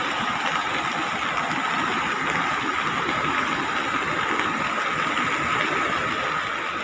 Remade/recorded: recorded